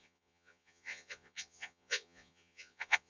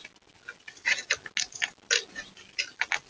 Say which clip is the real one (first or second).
second